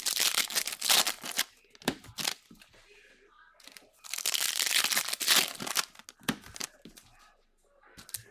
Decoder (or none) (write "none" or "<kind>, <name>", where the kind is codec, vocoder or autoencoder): none